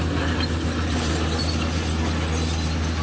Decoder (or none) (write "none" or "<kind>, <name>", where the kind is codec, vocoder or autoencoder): none